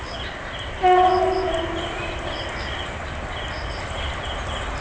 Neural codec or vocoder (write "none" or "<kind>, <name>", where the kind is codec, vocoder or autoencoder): none